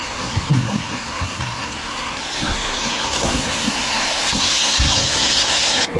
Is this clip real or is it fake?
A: fake